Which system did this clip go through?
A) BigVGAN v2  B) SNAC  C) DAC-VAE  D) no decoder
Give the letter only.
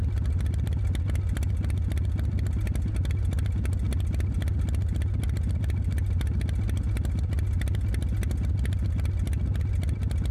D